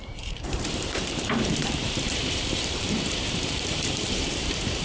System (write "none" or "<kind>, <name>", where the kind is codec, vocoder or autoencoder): vocoder, BigVGAN v2